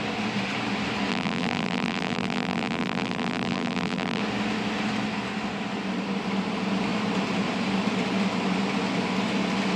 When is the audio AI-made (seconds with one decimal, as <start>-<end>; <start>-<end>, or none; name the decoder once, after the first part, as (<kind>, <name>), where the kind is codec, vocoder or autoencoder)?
1.1-4.2 (vocoder, BigVGAN v2)